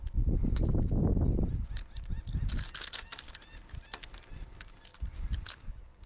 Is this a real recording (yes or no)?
yes